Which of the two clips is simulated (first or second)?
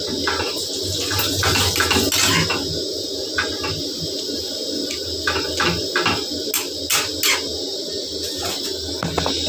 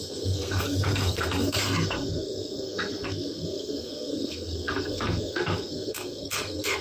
second